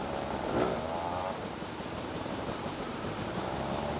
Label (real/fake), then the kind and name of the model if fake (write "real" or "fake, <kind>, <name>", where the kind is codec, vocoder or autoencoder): fake, vocoder, BigVGAN v2